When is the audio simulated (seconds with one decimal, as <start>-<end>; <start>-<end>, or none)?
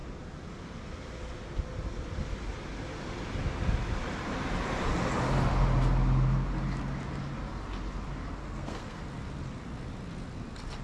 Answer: 8.4-9.0